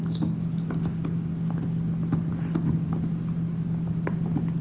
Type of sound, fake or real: real